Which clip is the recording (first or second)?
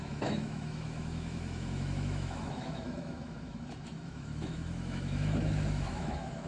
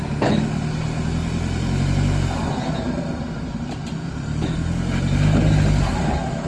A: second